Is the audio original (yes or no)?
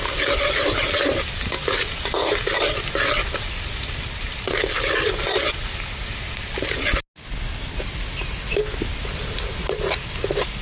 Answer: yes